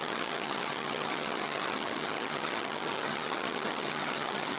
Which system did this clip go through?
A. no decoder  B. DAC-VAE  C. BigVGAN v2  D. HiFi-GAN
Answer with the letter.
D